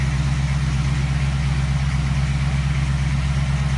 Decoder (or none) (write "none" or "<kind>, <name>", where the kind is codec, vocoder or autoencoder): none